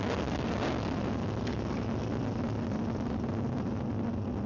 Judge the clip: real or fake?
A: real